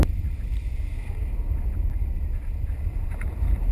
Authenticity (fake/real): fake